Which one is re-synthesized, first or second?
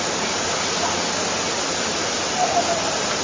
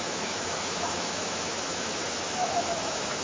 second